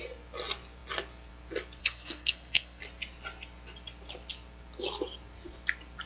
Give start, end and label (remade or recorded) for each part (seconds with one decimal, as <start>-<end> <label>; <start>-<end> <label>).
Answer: 0.0-1.8 recorded; 1.8-2.8 remade; 2.8-6.1 recorded